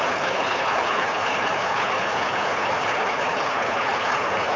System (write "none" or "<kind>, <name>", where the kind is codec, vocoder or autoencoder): codec, HILCodec